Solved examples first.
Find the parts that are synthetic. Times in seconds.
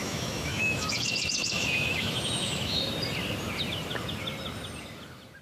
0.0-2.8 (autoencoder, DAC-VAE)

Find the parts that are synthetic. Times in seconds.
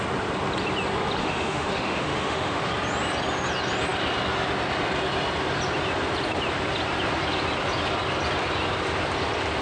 1.2-2.7 (autoencoder, DAC-VAE)